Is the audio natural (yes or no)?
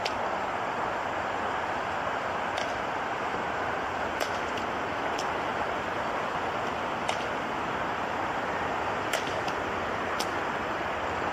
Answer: no